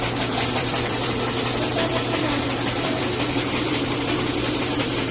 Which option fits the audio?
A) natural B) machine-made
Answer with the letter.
B